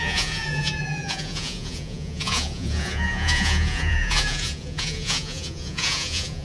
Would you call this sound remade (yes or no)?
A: yes